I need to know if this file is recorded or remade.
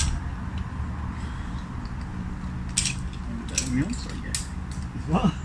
recorded